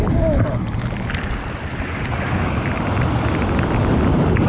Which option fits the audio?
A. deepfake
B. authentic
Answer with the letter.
B